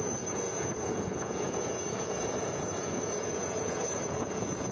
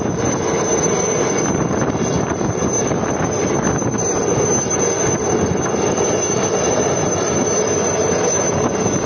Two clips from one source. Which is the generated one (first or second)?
first